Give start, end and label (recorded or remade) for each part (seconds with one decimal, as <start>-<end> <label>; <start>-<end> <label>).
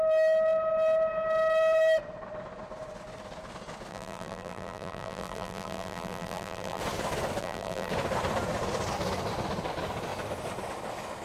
0.0-3.9 recorded; 3.9-6.8 remade; 6.8-7.4 recorded; 7.4-7.9 remade; 7.9-11.2 recorded